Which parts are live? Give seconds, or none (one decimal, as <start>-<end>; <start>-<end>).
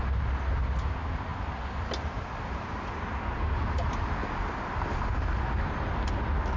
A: 0.0-6.6